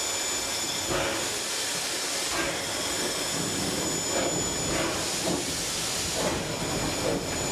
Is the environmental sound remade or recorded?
recorded